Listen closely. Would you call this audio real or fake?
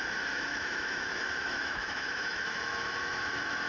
fake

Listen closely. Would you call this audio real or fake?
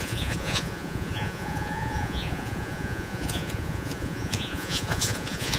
fake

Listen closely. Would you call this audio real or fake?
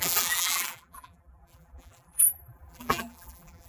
fake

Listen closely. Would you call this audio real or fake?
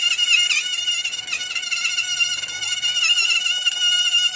real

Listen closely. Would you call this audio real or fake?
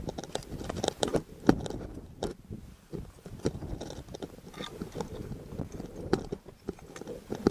real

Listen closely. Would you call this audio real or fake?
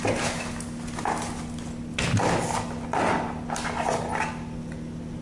real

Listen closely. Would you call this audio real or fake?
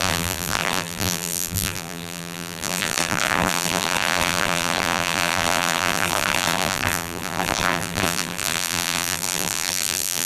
fake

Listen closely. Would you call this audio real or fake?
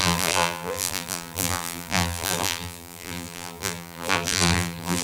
fake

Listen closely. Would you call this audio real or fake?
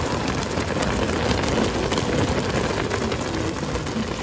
real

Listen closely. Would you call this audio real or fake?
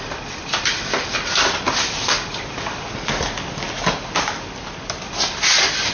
real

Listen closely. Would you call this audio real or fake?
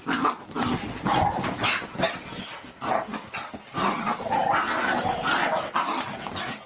real